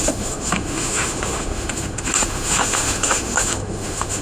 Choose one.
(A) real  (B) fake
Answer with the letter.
B